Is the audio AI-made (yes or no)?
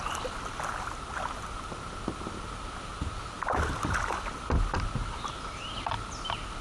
no